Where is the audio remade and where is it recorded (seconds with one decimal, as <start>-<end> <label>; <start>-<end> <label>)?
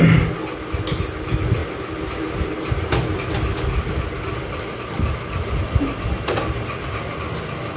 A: 0.0-7.8 recorded